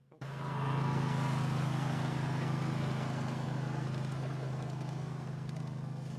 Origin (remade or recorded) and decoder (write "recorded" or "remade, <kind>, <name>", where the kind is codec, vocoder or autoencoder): remade, codec, SNAC